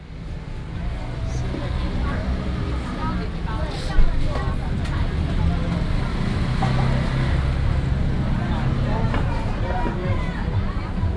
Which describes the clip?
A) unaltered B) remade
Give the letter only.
A